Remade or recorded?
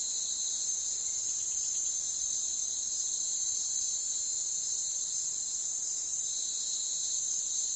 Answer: remade